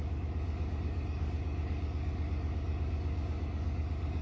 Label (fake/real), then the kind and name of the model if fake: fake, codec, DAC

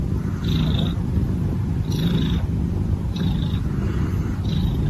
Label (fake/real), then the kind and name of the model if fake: real